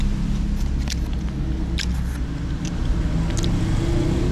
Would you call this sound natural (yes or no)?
yes